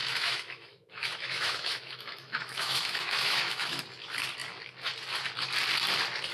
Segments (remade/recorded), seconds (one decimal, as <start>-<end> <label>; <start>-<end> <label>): 0.0-3.8 remade; 3.8-6.3 recorded